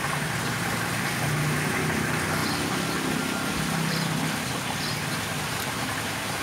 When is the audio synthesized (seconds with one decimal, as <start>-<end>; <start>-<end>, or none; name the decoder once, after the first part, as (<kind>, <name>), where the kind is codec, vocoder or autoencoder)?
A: none